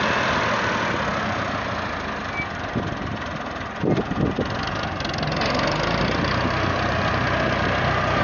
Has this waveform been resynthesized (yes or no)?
no